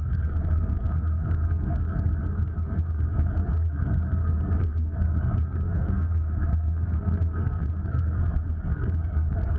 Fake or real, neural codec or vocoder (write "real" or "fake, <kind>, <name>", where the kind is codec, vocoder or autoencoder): fake, codec, SNAC